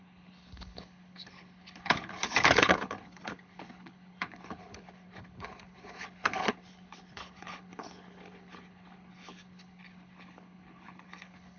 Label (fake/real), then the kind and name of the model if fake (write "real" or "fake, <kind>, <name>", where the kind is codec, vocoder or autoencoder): fake, codec, HILCodec